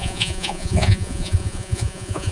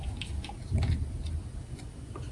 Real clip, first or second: second